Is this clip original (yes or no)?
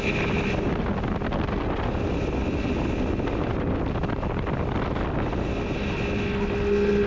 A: yes